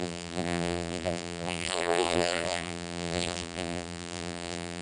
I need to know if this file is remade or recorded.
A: remade